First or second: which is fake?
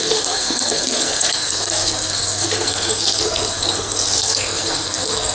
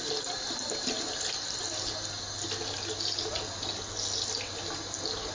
first